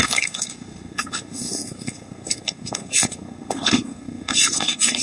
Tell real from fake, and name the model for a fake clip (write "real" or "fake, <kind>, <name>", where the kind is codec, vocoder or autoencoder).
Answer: fake, codec, SNAC